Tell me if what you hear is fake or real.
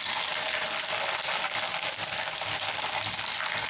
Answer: real